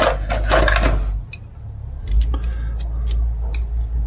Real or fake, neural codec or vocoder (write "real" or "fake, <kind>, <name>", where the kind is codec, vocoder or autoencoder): real